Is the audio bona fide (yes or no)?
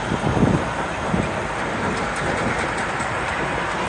yes